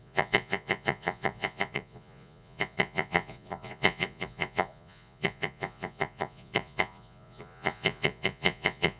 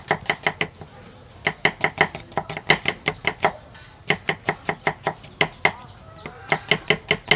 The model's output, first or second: first